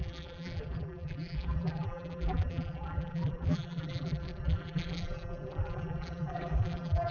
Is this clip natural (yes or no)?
no